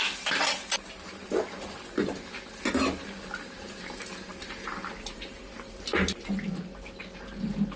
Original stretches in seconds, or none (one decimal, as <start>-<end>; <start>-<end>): 0.0-7.8